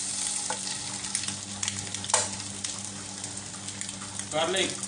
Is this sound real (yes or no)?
yes